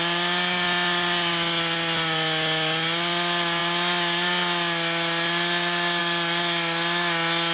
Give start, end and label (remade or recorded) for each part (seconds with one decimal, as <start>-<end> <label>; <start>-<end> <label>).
0.0-7.5 recorded